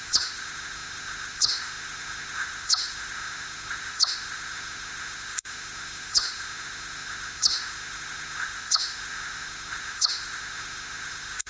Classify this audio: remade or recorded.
remade